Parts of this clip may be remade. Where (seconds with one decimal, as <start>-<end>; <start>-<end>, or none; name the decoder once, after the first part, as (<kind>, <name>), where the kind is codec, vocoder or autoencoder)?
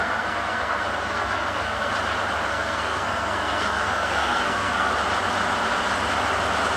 0.0-1.9 (codec, SNAC); 2.5-4.9